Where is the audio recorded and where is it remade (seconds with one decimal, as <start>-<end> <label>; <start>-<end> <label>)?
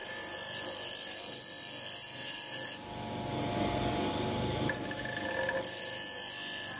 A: 0.0-6.8 recorded